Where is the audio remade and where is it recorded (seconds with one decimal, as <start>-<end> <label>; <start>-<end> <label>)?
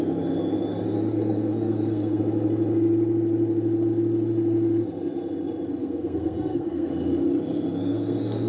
0.0-1.1 recorded; 1.1-2.2 remade; 2.2-5.8 recorded; 5.8-6.9 remade; 6.9-7.8 recorded; 7.8-8.5 remade